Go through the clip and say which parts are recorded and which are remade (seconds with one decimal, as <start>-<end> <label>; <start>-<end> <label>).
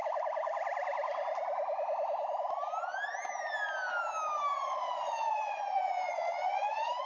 0.0-4.5 recorded; 4.5-7.1 remade